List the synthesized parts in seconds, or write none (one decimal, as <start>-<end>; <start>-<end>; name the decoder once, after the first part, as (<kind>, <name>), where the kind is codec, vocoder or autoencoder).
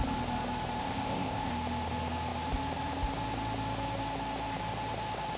0.8-1.5 (codec, ZipCodec)